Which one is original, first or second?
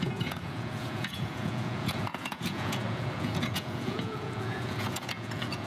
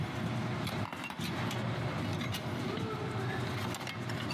second